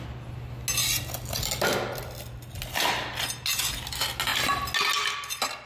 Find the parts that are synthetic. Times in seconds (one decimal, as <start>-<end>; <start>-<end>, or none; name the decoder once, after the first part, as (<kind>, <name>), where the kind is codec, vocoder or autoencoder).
none